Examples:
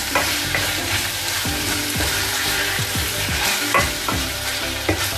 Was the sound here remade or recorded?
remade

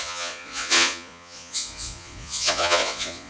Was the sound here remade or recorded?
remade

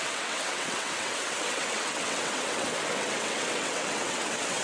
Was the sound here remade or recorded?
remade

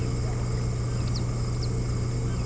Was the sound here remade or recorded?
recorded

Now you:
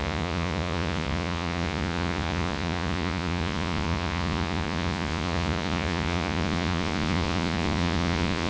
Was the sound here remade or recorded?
remade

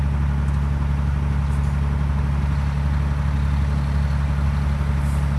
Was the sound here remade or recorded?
recorded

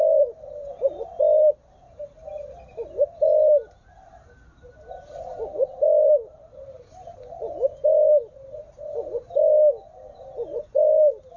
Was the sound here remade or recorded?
recorded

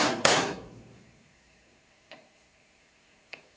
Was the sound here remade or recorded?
remade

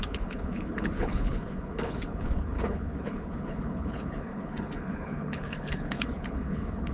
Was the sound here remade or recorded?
remade